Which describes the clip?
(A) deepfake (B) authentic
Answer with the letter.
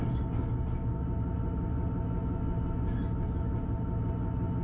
B